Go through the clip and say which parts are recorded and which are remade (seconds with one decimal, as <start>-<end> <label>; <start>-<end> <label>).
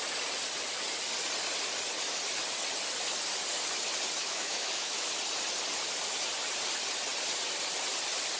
0.0-4.2 recorded; 4.2-5.1 remade; 5.1-8.4 recorded